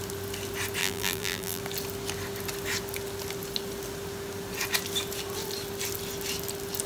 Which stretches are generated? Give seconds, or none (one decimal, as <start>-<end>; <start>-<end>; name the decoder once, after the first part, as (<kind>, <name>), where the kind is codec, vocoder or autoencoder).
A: 0.8-1.6 (vocoder, BigVGAN v2)